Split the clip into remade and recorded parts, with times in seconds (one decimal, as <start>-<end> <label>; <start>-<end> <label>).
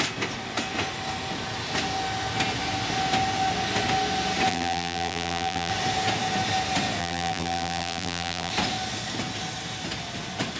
0.0-4.5 recorded; 4.5-5.7 remade; 5.7-7.0 recorded; 7.0-8.5 remade; 8.5-10.6 recorded